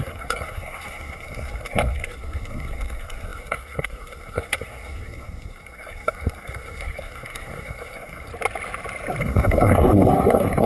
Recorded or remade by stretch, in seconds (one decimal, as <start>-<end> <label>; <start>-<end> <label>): 0.0-8.3 remade; 8.3-9.2 recorded; 9.2-10.7 remade

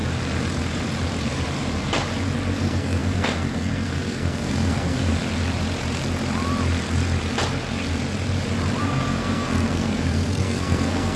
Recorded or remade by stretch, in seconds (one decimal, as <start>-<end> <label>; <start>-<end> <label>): 0.0-2.6 recorded; 2.6-5.1 remade; 5.1-8.8 recorded; 8.8-11.2 remade

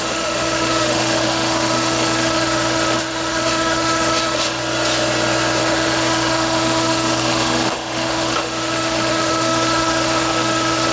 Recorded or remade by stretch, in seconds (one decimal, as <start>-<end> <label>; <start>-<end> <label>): 0.0-4.6 remade; 4.6-5.6 recorded; 5.6-10.9 remade

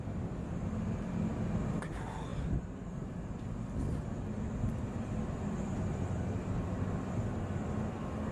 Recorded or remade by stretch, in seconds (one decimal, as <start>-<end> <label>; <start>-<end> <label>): 0.0-8.3 remade